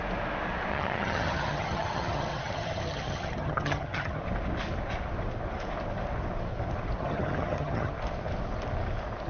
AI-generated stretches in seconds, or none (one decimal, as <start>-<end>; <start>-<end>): 0.7-4.2; 7.0-7.9